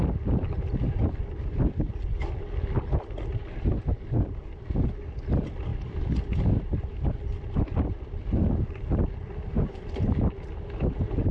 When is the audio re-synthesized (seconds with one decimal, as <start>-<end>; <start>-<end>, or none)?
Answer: none